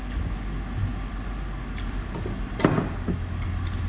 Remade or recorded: recorded